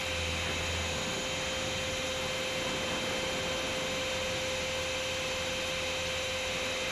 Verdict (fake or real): real